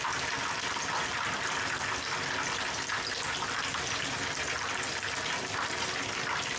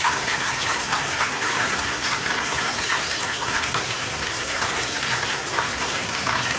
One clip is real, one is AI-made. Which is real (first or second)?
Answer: first